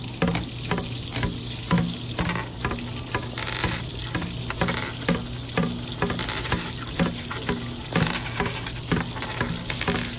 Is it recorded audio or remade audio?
recorded